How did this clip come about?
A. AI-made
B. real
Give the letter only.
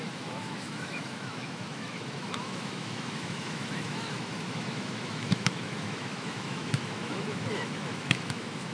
A